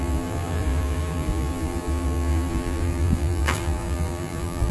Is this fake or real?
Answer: fake